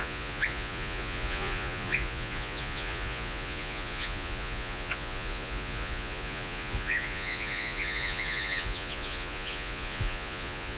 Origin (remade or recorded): remade